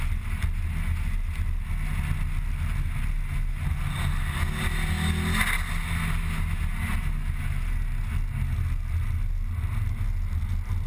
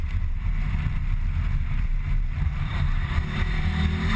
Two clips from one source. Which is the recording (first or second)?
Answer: first